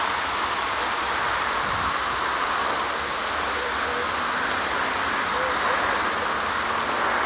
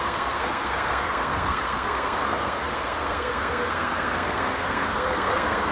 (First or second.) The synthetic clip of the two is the second